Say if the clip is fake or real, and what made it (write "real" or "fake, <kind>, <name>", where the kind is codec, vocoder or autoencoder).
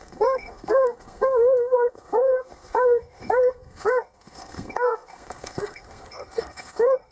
fake, codec, SNAC